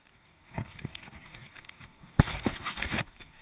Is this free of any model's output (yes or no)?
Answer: no